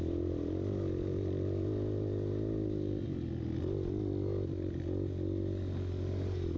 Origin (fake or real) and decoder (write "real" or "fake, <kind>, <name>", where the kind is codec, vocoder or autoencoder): real